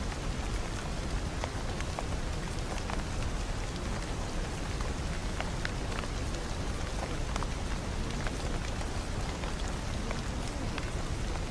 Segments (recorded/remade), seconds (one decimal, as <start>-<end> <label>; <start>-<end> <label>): 0.0-11.5 recorded